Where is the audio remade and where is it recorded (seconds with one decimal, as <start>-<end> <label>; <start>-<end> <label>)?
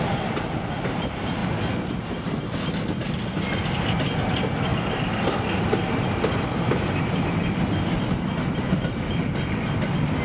0.0-10.2 recorded